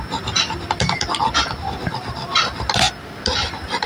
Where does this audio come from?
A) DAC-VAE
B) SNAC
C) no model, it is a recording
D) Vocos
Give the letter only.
C